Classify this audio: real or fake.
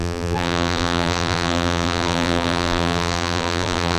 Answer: fake